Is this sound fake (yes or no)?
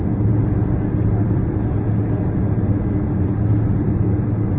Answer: no